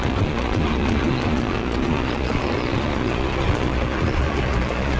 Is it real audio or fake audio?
fake